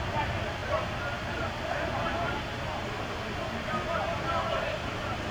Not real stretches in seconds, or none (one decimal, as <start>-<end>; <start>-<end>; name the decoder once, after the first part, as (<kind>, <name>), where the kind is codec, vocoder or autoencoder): none